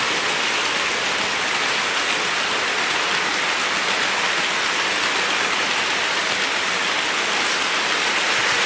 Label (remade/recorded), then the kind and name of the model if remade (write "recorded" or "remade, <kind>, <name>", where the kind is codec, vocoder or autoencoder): recorded